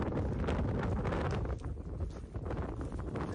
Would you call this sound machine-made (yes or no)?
no